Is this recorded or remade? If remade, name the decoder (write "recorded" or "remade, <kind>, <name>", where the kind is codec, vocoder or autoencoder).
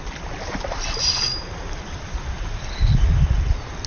recorded